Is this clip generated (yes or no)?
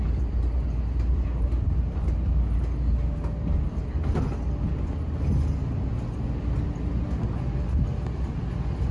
no